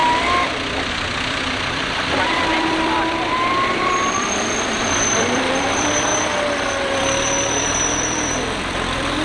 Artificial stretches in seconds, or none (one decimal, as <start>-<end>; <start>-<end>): 0.9-6.1; 6.7-9.2